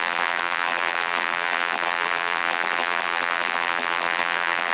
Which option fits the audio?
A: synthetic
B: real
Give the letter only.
A